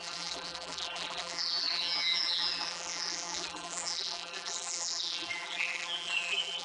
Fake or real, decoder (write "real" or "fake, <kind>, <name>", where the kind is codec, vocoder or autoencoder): fake, vocoder, BigVGAN v2